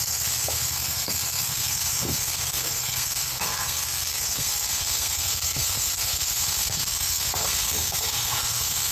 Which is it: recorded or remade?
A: remade